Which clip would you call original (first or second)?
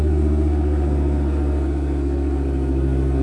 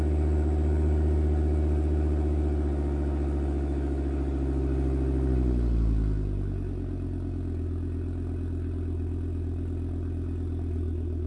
second